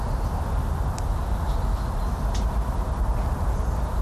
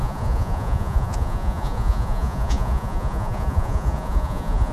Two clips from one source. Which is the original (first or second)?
first